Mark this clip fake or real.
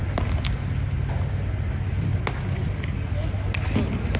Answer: real